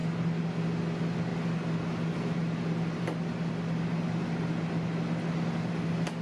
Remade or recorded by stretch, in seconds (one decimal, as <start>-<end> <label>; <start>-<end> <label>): 0.0-6.2 recorded